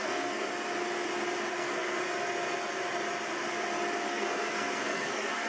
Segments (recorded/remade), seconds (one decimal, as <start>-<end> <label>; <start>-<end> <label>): 0.0-0.5 remade; 0.5-1.5 recorded; 1.5-2.0 remade; 2.0-4.1 recorded; 4.1-5.5 remade